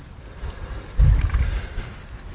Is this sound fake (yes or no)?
no